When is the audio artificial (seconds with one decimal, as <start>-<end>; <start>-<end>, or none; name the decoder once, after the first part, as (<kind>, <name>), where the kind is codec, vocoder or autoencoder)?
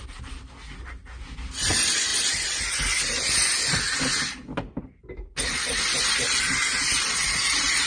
none